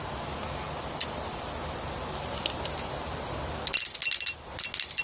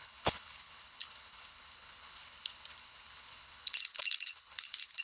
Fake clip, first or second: second